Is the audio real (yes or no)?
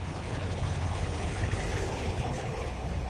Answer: no